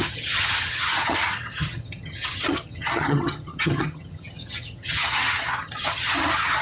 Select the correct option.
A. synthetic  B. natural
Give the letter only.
A